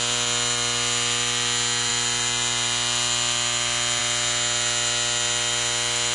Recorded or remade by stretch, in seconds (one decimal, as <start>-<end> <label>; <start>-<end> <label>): 0.0-6.1 recorded